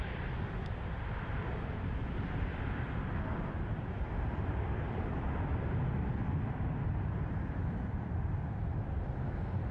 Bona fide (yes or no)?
no